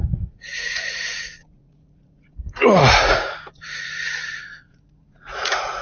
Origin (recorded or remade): remade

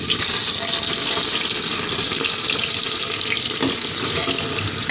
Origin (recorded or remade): recorded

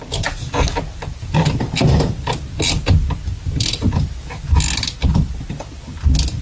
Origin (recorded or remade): recorded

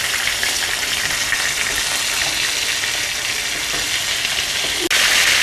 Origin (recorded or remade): recorded